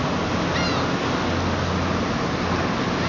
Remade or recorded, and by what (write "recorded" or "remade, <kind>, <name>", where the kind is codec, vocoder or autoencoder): recorded